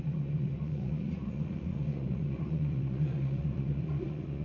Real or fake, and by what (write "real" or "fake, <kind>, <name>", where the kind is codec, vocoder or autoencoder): fake, vocoder, Vocos